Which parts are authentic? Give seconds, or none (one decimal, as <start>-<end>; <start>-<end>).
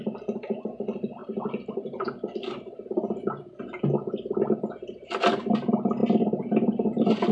0.0-7.3